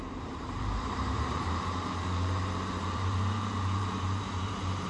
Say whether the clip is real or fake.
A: fake